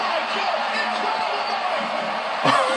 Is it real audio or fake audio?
real